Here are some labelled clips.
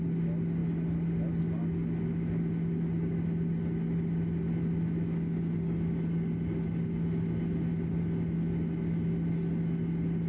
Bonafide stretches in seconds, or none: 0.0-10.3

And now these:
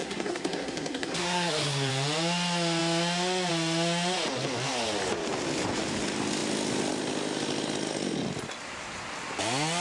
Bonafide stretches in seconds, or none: 1.9-9.8